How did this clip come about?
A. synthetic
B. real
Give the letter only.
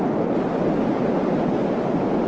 B